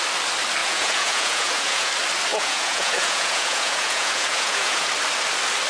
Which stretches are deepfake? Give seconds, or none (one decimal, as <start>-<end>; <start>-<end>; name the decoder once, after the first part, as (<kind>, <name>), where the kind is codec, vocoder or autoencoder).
0.6-1.9 (vocoder, Vocos); 2.3-4.9